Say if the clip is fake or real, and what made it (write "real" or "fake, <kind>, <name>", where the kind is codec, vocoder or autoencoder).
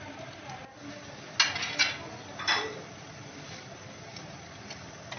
real